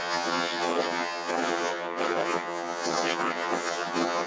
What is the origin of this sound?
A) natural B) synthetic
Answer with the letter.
B